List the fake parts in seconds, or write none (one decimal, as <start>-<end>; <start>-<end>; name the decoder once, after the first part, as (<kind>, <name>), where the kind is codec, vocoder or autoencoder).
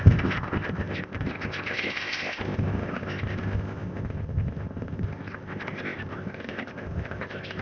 0.0-7.6 (codec, ZipCodec)